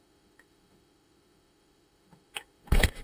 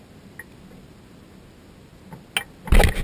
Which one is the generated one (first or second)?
first